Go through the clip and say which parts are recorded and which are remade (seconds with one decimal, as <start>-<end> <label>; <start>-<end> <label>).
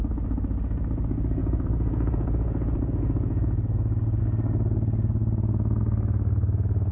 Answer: 0.0-1.4 recorded; 1.4-4.2 remade; 4.2-6.9 recorded